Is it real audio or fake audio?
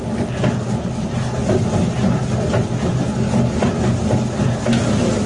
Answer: real